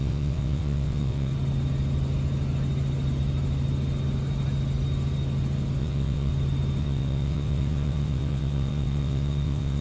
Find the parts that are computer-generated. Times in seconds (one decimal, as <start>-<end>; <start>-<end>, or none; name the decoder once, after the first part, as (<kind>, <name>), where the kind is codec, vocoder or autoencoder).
0.0-1.3 (vocoder, WaveNeXt); 5.8-6.3; 6.8-9.8